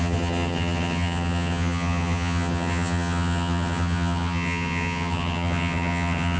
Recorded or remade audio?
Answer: remade